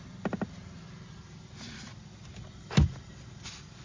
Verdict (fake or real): real